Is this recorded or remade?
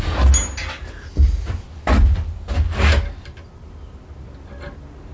recorded